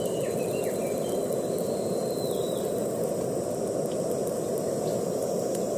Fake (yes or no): no